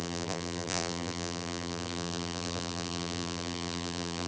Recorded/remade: remade